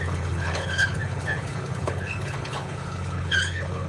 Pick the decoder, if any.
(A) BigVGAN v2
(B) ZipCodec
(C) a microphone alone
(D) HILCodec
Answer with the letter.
D